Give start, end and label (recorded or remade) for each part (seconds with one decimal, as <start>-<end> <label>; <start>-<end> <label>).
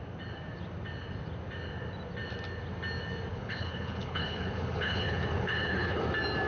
0.0-3.3 recorded; 3.3-6.0 remade; 6.0-6.5 recorded